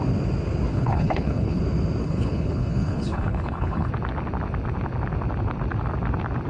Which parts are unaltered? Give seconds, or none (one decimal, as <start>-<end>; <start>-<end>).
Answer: 0.0-0.7; 1.6-2.0; 3.9-6.5